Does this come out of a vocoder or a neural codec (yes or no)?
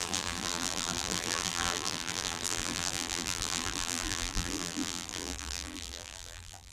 yes